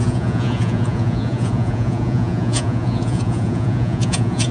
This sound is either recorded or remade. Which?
remade